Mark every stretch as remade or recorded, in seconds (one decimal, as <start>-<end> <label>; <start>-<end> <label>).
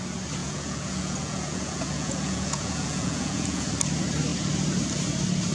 0.0-0.4 recorded; 0.4-3.7 remade; 3.7-5.5 recorded